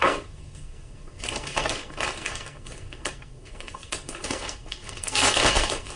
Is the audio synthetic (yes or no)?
yes